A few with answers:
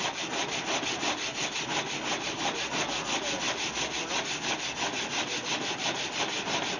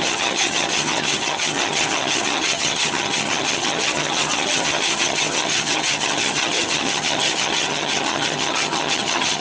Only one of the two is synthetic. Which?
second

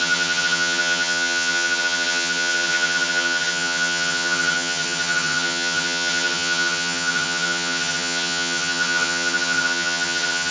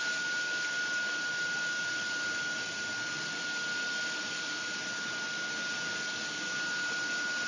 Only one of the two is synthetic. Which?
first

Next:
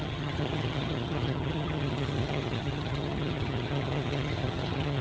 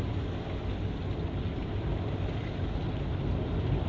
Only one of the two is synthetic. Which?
first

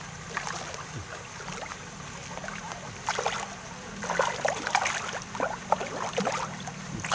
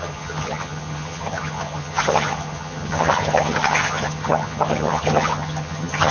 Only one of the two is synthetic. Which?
second